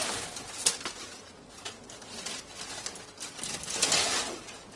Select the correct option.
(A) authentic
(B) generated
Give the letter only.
A